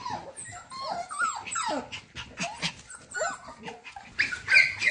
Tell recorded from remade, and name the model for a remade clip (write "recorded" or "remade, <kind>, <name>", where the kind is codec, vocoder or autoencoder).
recorded